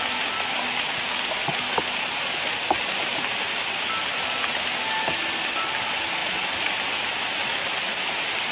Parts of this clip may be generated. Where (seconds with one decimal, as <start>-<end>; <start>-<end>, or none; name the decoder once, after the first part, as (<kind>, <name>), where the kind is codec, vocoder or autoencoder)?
none